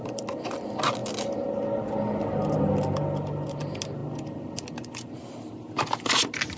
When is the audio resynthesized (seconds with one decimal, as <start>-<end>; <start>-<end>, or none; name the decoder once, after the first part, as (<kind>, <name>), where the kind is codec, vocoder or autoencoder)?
none